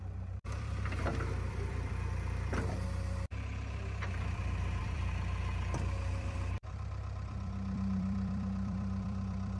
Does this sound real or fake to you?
fake